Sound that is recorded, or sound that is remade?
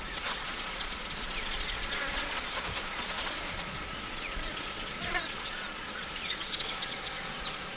remade